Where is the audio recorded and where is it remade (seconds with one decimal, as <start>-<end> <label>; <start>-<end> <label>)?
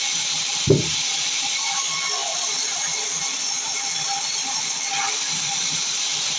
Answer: 0.0-6.4 remade